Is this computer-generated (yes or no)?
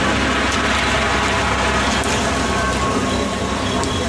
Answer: no